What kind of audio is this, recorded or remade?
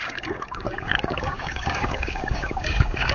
remade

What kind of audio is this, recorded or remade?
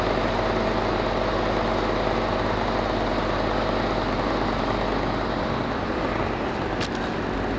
recorded